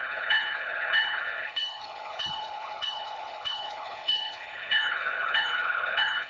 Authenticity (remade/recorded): remade